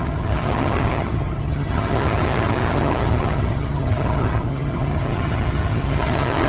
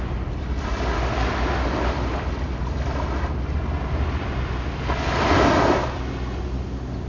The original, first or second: second